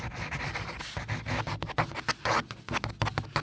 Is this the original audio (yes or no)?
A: yes